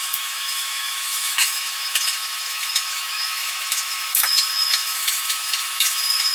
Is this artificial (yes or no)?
yes